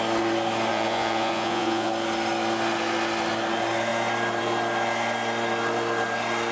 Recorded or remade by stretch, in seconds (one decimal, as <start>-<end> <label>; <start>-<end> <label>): 0.0-0.7 recorded; 0.7-1.9 remade; 1.9-6.5 recorded

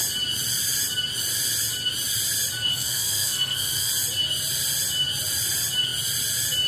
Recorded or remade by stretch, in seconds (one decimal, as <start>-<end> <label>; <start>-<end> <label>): 0.0-2.7 recorded; 2.7-3.9 remade; 3.9-6.7 recorded

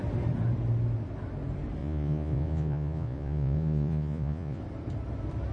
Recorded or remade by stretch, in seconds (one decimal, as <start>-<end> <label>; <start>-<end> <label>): 0.0-1.8 recorded; 1.8-4.6 remade; 4.6-5.5 recorded

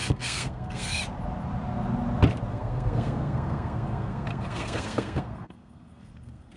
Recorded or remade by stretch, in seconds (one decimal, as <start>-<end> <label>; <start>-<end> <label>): 0.0-1.0 remade; 1.0-2.5 recorded; 2.5-6.6 remade

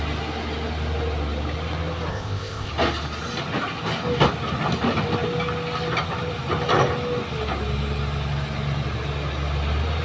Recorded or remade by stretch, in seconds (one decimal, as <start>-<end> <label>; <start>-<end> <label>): 0.0-2.1 recorded; 2.1-2.7 remade; 2.7-10.0 recorded

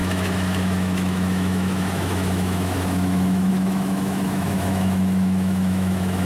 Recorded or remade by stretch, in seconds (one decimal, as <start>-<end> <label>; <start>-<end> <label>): 0.0-6.3 remade

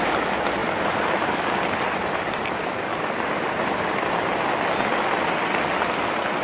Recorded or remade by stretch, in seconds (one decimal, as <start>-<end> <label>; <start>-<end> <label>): 0.0-0.6 recorded; 0.6-4.4 remade; 4.4-6.4 recorded